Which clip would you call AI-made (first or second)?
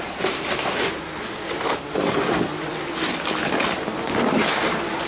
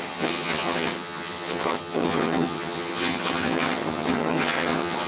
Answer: second